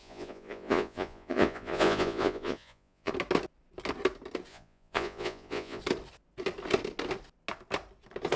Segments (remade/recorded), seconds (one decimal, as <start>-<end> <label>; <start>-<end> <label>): 0.0-3.1 remade; 3.1-4.5 recorded; 4.5-5.8 remade; 5.8-8.4 recorded